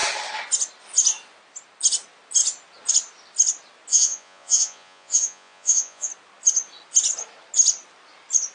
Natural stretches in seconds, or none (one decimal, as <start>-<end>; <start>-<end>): 0.0-3.9; 6.1-8.5